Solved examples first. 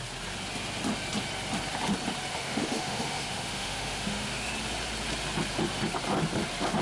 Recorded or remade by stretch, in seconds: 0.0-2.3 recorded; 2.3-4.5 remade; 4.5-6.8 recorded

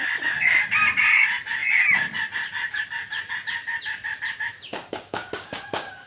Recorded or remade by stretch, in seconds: 0.0-4.7 recorded; 4.7-6.1 remade